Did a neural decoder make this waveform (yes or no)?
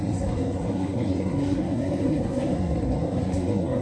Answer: yes